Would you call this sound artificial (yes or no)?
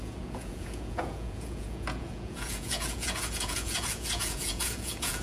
yes